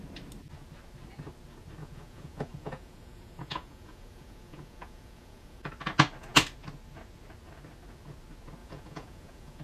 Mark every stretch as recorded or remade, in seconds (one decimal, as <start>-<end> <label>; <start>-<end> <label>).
0.0-1.8 recorded; 1.8-5.7 remade; 5.7-8.6 recorded; 8.6-9.6 remade